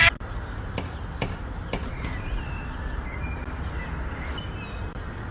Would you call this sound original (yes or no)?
yes